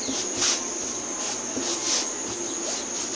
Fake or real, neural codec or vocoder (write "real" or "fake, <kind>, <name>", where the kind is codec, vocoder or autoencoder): real